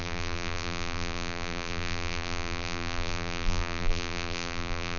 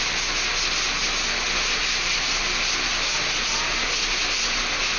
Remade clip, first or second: first